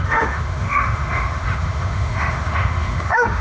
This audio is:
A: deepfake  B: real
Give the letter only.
A